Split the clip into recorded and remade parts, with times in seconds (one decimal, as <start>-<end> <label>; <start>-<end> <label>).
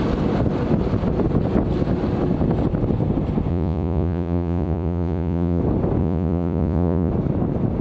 0.0-3.5 recorded; 3.5-5.6 remade; 5.6-6.0 recorded; 6.0-7.1 remade; 7.1-7.8 recorded